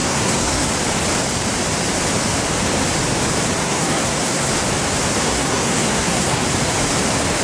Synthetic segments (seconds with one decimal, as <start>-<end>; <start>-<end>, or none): 0.0-0.7; 3.6-4.5; 5.2-6.4